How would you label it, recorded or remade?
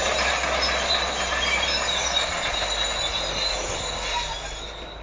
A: recorded